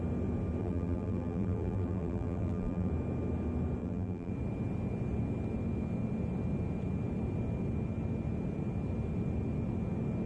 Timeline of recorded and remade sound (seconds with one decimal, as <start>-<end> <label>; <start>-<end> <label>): 0.0-0.6 recorded; 0.6-2.9 remade; 2.9-3.8 recorded; 3.8-4.3 remade; 4.3-10.3 recorded